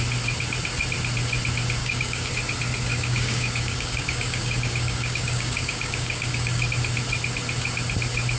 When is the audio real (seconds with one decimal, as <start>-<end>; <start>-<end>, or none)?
0.0-1.8; 2.3-2.9; 6.7-8.4